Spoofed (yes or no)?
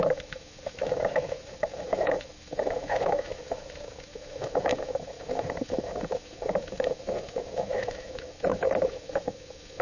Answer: yes